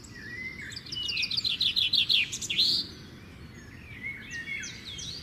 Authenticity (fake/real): real